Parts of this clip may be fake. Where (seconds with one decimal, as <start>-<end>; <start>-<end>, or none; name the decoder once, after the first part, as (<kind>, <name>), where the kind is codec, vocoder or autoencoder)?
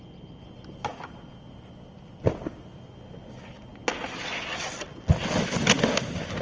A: none